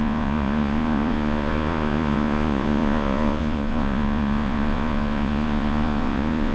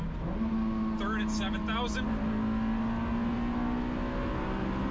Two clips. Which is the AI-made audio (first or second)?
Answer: first